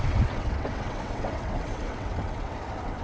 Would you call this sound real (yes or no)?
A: no